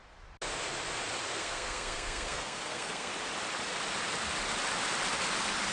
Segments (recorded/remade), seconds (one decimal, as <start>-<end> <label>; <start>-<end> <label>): 0.0-1.4 recorded; 1.4-3.1 remade; 3.1-5.7 recorded